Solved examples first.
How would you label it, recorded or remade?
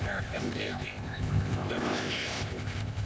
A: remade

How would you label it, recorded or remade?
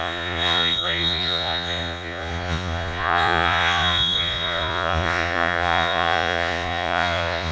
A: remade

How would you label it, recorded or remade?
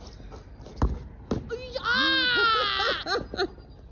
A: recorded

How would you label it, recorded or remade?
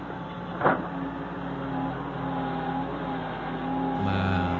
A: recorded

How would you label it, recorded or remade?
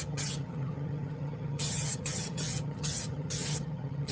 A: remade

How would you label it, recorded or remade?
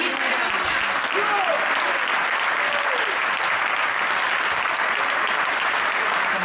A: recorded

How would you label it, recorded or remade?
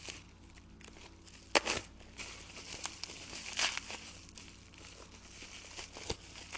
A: recorded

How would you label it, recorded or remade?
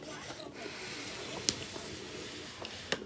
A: recorded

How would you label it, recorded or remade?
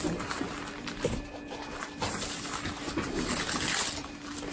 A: recorded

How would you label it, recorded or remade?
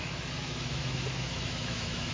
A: remade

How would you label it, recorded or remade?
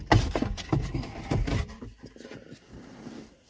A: recorded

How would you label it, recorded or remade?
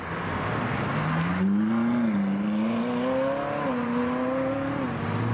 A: recorded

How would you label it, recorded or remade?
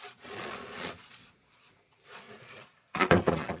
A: remade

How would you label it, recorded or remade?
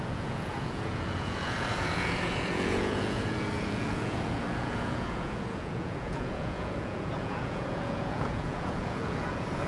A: remade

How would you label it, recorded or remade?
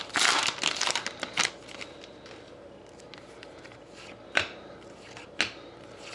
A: recorded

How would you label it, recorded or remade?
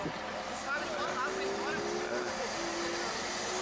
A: recorded